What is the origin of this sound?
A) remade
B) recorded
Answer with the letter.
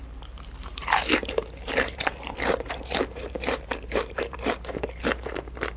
A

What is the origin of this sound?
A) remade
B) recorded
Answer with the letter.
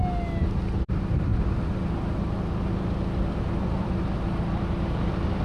B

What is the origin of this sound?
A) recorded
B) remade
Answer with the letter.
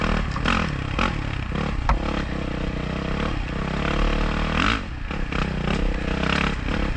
A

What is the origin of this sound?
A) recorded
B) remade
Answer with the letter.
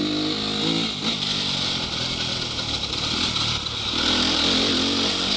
A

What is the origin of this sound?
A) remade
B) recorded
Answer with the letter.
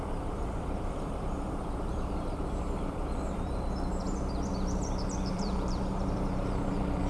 A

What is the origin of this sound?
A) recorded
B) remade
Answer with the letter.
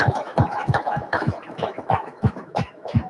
B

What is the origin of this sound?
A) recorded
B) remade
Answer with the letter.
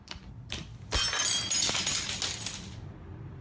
A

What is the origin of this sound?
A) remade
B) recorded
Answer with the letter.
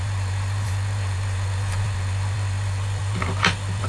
A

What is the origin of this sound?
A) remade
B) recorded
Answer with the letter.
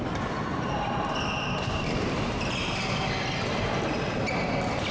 B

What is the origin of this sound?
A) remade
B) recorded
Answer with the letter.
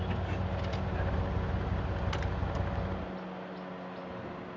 B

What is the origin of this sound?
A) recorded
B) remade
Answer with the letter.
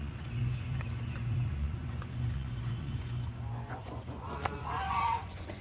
B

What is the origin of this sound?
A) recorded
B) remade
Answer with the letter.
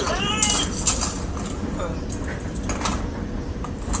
A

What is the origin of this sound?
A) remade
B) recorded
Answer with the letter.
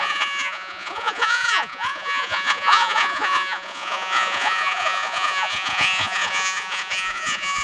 A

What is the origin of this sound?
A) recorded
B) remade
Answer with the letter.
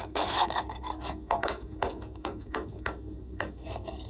B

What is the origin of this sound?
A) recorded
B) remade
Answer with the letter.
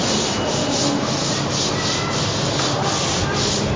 A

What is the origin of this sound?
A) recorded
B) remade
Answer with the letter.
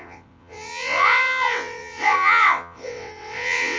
B